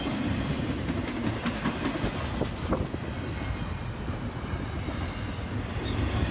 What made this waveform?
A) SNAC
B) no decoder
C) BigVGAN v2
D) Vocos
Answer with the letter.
B